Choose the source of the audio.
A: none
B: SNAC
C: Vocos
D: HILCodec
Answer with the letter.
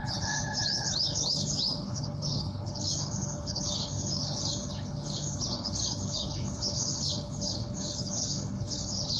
D